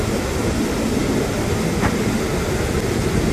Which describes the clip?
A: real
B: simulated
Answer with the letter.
A